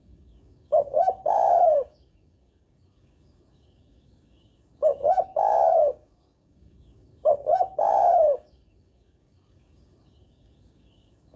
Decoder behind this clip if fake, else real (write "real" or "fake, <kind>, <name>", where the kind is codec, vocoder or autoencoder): fake, codec, DAC